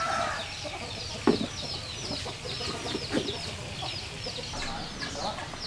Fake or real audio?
fake